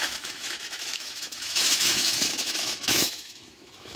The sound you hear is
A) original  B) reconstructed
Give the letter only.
B